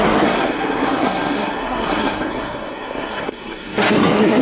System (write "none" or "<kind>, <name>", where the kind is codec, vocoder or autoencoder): codec, SNAC